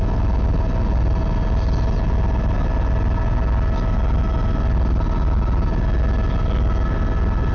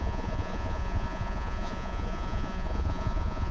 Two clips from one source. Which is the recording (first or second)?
first